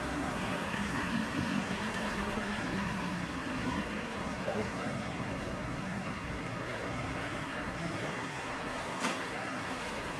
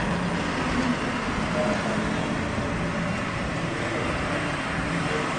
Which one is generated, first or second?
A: first